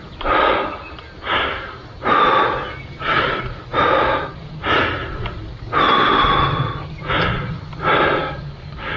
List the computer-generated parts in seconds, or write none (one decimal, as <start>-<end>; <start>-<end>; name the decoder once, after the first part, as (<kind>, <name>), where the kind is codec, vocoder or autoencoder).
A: 8.2-9.0 (codec, DAC)